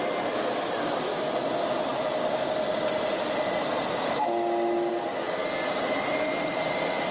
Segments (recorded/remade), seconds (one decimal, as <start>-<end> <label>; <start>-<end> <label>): 0.0-7.1 recorded